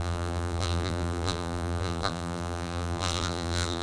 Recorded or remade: remade